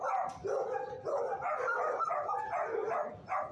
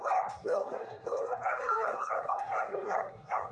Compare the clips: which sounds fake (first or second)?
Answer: second